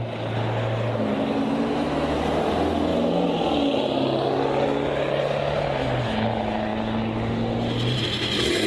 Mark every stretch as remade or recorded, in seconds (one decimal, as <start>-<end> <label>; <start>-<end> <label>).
0.0-8.7 recorded